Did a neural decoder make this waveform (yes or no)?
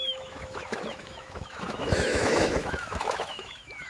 yes